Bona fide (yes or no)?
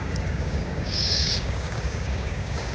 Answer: no